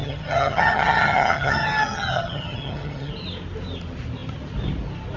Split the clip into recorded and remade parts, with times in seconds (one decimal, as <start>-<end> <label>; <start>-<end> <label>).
0.0-3.1 remade; 3.1-5.2 recorded